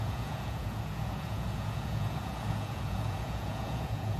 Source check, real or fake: fake